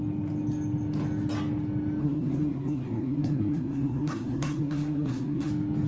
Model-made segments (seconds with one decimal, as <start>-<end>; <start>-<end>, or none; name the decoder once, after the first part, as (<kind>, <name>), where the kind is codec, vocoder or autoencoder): 2.0-5.5 (codec, SNAC)